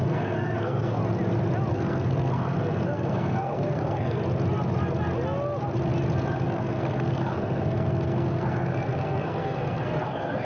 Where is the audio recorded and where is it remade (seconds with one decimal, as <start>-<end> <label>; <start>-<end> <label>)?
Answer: 0.0-1.0 remade; 1.0-1.7 recorded; 1.7-4.2 remade; 4.2-6.3 recorded; 6.3-10.4 remade